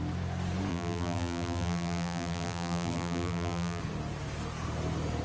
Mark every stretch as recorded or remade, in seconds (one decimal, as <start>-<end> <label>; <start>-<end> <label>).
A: 0.0-0.7 recorded; 0.7-3.8 remade; 3.8-5.2 recorded